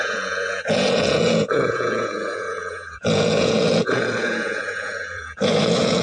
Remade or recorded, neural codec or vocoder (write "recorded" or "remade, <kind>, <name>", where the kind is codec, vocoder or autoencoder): remade, vocoder, Vocos